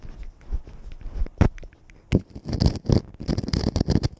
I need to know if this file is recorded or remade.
recorded